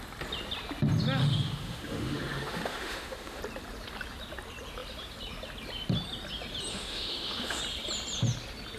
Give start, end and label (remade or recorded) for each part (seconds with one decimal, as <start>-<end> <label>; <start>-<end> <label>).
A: 0.0-1.2 recorded; 1.2-3.4 remade; 3.4-6.7 recorded; 6.7-7.6 remade; 7.6-8.8 recorded